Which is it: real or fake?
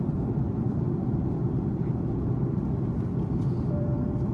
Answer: fake